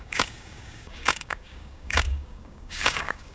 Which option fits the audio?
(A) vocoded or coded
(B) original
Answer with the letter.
A